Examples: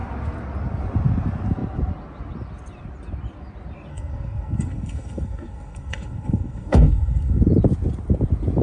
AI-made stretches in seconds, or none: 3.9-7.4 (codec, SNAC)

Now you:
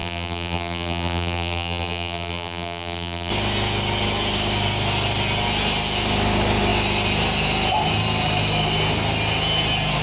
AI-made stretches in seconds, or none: 0.0-3.3 (vocoder, BigVGAN v2)

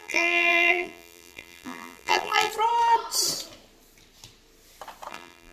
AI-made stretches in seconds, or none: 0.0-2.5 (vocoder, BigVGAN v2); 5.1-5.5

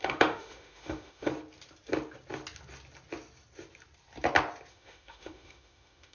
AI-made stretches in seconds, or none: 0.0-1.3 (autoencoder, DAC-VAE); 4.7-6.1